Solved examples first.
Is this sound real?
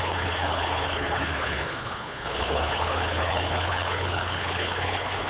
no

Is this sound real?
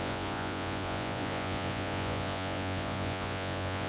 no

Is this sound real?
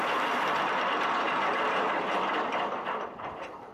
yes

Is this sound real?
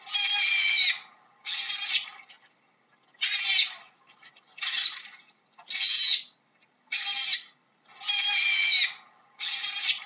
yes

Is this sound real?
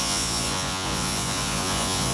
no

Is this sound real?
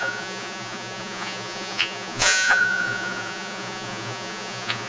no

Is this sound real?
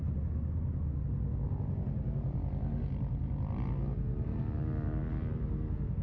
yes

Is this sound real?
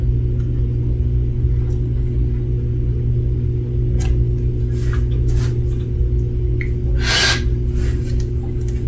yes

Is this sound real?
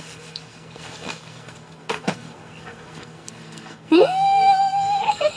no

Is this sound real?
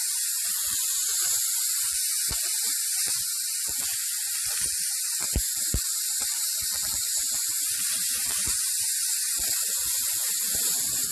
yes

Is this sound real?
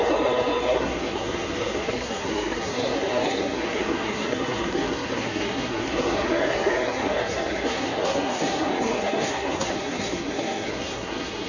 no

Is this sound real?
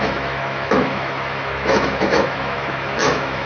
no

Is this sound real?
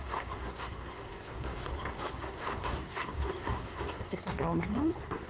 no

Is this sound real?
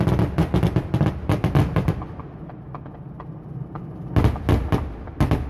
yes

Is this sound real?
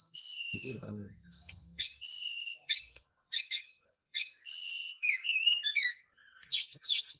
no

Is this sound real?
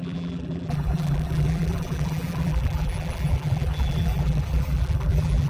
no